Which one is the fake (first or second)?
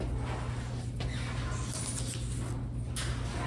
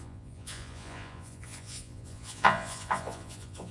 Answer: second